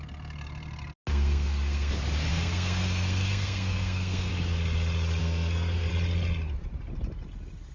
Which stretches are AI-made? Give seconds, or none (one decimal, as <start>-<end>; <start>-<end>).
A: 1.1-1.9; 2.3-4.3; 5.2-5.9